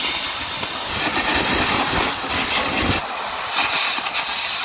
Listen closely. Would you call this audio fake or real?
real